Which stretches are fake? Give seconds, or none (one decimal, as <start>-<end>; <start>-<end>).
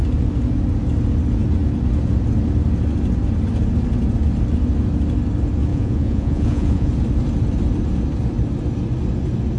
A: 5.7-6.9